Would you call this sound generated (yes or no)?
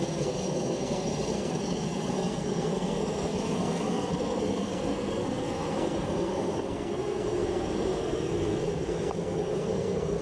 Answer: yes